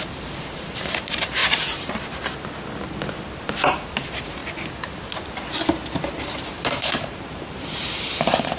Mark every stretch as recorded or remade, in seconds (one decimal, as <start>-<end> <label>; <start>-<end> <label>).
0.0-1.4 remade; 1.4-3.4 recorded; 3.4-4.4 remade; 4.4-6.2 recorded; 6.2-8.6 remade